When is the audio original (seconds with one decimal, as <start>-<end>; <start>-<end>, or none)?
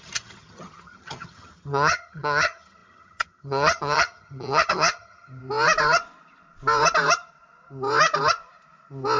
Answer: 5.4-9.2